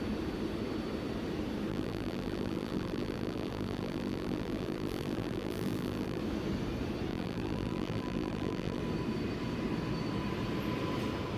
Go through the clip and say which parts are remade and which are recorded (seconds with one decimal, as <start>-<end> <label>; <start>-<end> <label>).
0.0-1.7 recorded; 1.7-6.2 remade; 6.2-7.1 recorded; 7.1-8.8 remade; 8.8-11.4 recorded